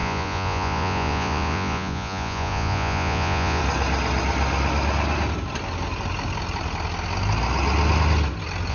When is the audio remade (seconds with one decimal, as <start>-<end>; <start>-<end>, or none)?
0.0-3.6